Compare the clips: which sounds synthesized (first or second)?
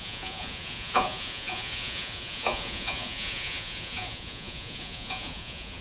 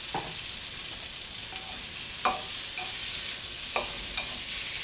first